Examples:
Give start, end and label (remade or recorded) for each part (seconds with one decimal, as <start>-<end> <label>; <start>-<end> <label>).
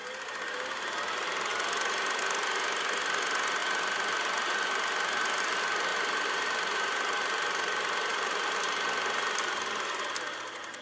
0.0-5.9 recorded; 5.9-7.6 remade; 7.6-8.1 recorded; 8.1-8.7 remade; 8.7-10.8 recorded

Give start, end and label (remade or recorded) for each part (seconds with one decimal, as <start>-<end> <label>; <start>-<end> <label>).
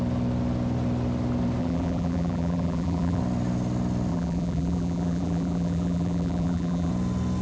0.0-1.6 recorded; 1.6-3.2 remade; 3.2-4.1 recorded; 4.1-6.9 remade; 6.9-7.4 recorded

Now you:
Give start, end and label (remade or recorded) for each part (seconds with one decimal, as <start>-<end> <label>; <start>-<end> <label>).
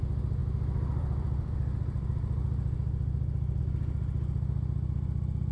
0.0-0.4 recorded; 0.4-3.6 remade; 3.6-5.5 recorded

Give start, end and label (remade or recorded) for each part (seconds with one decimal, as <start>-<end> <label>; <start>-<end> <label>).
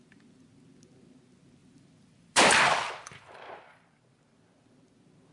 0.0-1.6 recorded; 1.6-4.8 remade; 4.8-5.3 recorded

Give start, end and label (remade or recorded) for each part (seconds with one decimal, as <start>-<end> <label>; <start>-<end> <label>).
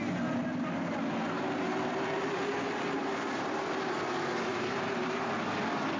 0.0-3.0 recorded; 3.0-4.0 remade; 4.0-4.5 recorded; 4.5-5.3 remade; 5.3-6.0 recorded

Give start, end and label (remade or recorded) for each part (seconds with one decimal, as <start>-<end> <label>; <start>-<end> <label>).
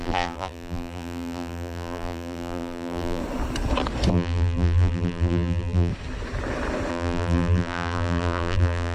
0.0-3.2 remade; 3.2-4.1 recorded; 4.1-5.9 remade; 5.9-6.9 recorded; 6.9-8.9 remade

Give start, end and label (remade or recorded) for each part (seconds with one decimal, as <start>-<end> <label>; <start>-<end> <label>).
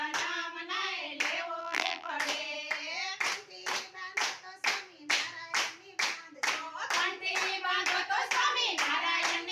0.0-1.6 recorded; 1.6-2.1 remade; 2.1-9.5 recorded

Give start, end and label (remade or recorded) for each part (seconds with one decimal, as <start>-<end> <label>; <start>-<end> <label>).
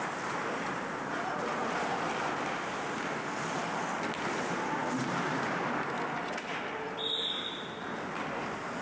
0.0-1.6 recorded; 1.6-2.1 remade; 2.1-8.8 recorded